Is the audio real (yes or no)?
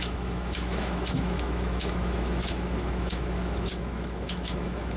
no